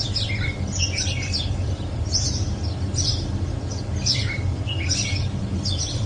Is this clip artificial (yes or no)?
no